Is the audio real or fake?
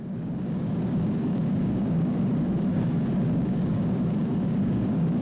fake